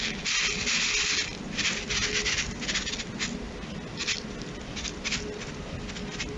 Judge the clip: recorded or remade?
recorded